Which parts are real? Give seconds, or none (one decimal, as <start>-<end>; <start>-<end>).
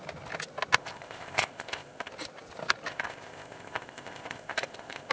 0.0-0.8; 2.1-2.9